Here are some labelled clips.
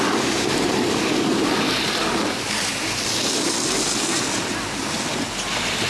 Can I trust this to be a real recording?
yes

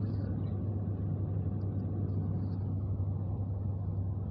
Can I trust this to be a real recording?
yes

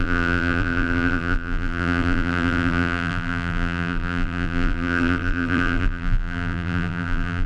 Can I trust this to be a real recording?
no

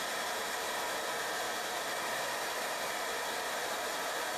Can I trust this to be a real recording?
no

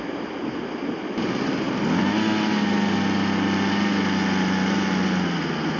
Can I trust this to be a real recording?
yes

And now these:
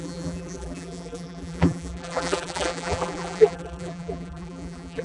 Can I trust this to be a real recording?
no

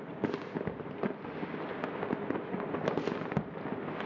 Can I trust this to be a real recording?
yes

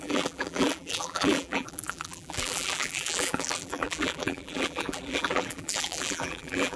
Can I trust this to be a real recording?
no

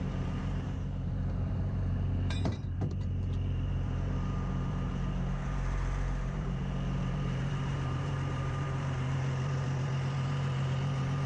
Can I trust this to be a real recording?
no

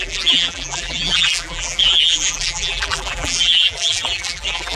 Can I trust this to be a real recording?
no